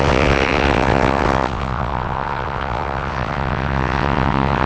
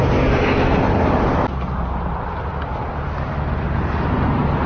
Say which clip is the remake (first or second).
first